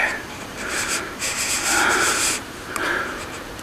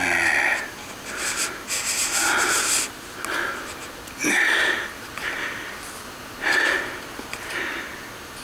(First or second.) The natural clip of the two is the second